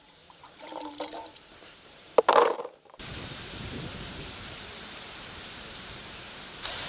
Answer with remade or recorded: remade